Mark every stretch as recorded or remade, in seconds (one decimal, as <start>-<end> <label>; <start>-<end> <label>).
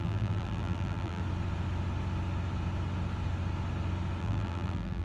0.0-1.2 remade; 1.2-4.2 recorded; 4.2-5.0 remade